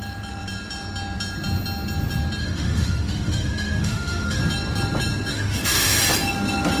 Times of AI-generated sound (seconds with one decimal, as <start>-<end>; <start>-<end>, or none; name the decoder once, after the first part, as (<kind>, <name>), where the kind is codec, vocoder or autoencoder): 2.4-4.4 (autoencoder, DAC-VAE); 5.3-6.0